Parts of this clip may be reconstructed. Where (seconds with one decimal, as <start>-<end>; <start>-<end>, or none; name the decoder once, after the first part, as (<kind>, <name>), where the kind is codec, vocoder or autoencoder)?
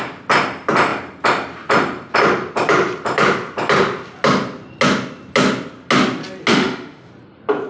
6.5-7.1 (autoencoder, DAC-VAE)